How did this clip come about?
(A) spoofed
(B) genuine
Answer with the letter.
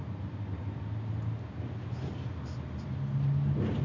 B